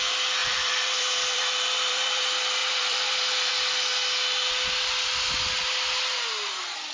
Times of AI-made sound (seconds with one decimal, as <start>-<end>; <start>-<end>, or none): 0.4-2.2; 2.6-3.5